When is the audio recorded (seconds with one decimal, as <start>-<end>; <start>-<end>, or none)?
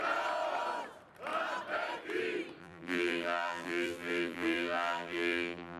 0.0-2.6